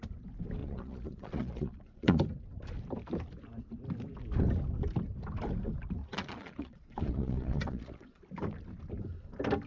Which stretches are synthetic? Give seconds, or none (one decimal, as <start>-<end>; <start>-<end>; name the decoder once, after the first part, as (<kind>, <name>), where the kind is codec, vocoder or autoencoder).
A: 0.6-2.2 (vocoder, Vocos); 6.0-8.2